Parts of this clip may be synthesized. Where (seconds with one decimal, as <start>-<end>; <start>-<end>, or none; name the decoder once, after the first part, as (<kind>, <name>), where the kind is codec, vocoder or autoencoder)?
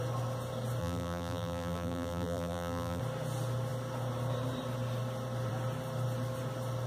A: 0.8-3.0 (vocoder, BigVGAN v2)